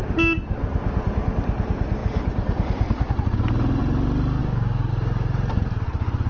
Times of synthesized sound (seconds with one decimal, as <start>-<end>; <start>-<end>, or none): 4.4-4.9